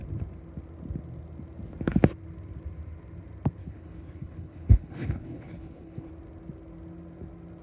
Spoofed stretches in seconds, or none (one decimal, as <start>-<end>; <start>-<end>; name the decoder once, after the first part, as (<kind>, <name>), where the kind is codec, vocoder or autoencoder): 3.6-6.1 (codec, HILCodec)